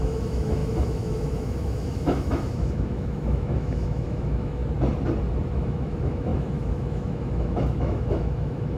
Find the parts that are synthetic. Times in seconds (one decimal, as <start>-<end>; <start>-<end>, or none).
0.0-4.6; 5.5-8.8